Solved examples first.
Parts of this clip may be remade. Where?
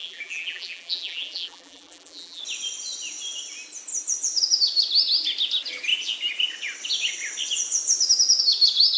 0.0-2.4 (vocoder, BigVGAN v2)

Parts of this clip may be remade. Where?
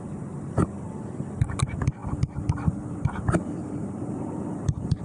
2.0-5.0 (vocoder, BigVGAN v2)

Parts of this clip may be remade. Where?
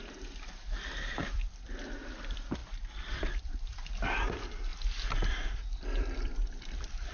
0.0-4.7 (vocoder, BigVGAN v2); 5.2-7.1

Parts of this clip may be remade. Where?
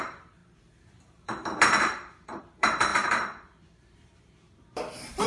0.0-5.3 (vocoder, BigVGAN v2)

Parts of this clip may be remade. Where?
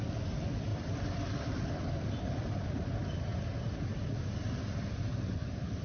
0.7-4.2 (vocoder, BigVGAN v2)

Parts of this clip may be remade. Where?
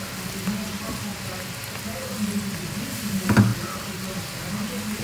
none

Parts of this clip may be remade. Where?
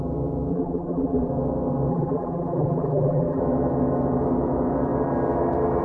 0.5-1.3 (vocoder, BigVGAN v2); 1.9-3.4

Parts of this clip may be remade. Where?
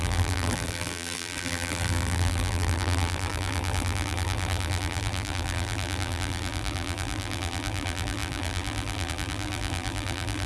0.0-10.5 (vocoder, BigVGAN v2)